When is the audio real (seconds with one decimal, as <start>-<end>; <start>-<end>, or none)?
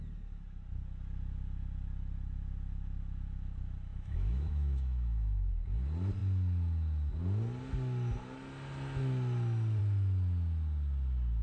0.0-3.9; 5.5-11.4